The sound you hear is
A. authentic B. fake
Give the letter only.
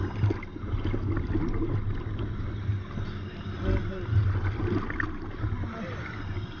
A